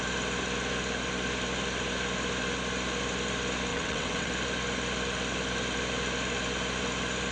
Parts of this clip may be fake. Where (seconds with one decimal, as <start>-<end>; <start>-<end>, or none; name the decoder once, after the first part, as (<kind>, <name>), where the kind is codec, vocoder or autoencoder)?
3.7-4.3 (vocoder, WaveNeXt)